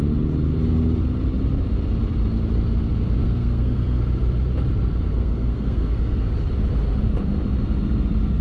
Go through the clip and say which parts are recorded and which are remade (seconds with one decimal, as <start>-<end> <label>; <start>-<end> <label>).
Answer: 0.0-3.2 recorded; 3.2-4.0 remade; 4.0-5.1 recorded; 5.1-6.3 remade; 6.3-8.4 recorded